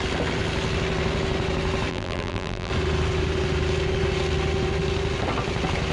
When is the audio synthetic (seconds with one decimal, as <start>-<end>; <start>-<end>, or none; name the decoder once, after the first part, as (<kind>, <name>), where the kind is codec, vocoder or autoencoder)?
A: 1.9-2.7 (vocoder, BigVGAN v2)